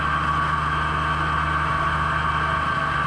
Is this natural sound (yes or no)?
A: yes